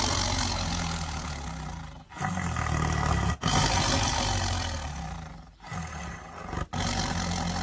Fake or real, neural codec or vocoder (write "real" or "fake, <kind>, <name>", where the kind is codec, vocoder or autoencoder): real